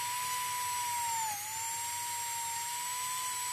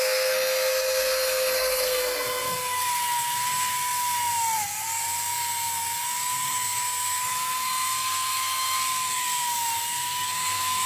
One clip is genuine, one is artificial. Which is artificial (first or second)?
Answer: second